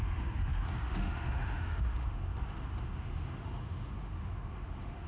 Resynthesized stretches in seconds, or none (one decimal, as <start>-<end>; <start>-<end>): 0.0-5.1